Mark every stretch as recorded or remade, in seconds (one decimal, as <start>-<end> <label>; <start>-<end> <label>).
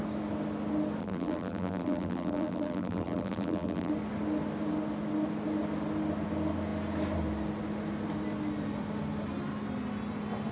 0.0-1.0 recorded; 1.0-3.9 remade; 3.9-10.5 recorded